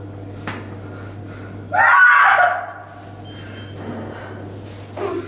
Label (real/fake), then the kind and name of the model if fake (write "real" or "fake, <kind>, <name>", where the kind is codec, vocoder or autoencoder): real